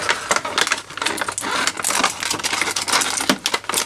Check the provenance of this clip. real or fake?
real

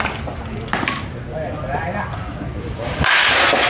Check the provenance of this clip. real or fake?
real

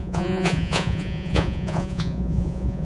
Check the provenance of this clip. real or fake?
fake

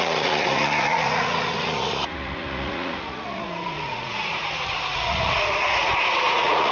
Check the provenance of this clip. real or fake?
fake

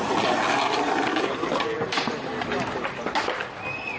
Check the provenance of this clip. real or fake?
real